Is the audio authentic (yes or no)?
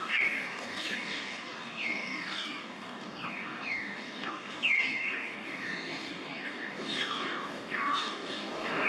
no